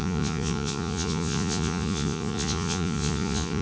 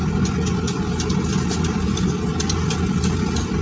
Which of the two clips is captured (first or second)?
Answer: second